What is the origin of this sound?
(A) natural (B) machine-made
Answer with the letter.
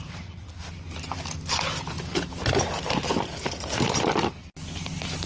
A